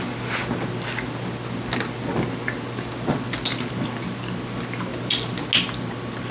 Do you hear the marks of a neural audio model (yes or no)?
no